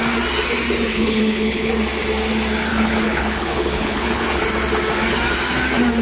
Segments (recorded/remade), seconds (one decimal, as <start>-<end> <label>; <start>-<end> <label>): 0.0-0.9 recorded; 0.9-1.7 remade; 1.7-2.7 recorded; 2.7-4.4 remade; 4.4-6.0 recorded